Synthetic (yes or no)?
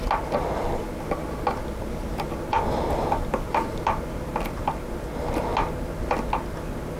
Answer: no